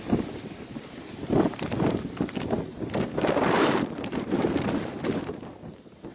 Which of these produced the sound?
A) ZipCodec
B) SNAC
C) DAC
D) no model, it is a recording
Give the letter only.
D